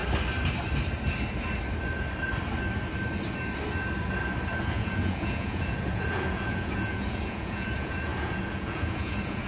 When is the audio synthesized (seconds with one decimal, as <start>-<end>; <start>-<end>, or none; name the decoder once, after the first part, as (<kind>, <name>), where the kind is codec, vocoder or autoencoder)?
4.6-9.5 (vocoder, Vocos)